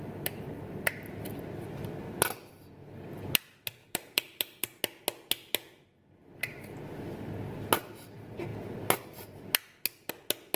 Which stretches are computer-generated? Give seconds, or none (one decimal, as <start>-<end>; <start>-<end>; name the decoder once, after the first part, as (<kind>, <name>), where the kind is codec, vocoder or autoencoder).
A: 3.8-4.8 (vocoder, BigVGAN v2)

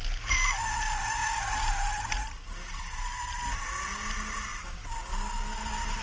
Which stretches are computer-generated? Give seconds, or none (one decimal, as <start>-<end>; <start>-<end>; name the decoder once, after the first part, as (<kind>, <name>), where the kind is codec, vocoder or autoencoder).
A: none

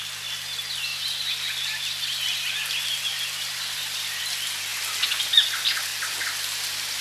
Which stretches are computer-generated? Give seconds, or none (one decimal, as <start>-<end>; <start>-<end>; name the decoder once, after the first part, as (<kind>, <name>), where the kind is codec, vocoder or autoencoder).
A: 0.9-2.2 (vocoder, BigVGAN v2); 3.1-4.2; 5.9-7.0

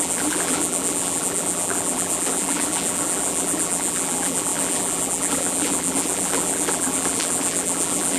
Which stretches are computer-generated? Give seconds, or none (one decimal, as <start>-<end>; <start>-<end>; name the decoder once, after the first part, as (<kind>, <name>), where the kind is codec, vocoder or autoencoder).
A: 0.0-8.2 (vocoder, BigVGAN v2)

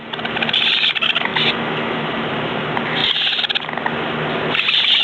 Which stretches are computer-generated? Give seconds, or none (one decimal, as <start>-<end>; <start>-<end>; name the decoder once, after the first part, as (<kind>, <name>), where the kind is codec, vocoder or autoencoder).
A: 0.0-1.3 (vocoder, BigVGAN v2); 1.9-3.0; 4.4-5.0

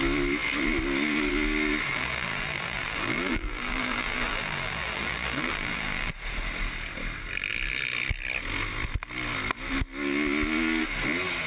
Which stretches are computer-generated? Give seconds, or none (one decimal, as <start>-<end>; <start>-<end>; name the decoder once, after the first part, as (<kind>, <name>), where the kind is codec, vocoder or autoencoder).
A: 1.9-6.1 (vocoder, BigVGAN v2)